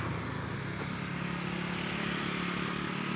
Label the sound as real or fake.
real